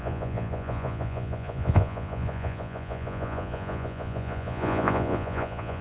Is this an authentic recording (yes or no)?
no